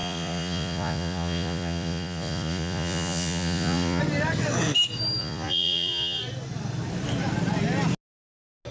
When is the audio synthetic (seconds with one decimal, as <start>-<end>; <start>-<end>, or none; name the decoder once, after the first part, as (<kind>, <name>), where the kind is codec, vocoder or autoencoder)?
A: 0.0-4.0 (vocoder, Vocos); 5.2-6.2